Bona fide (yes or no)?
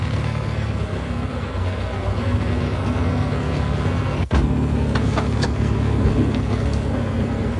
no